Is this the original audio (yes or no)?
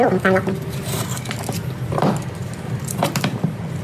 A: no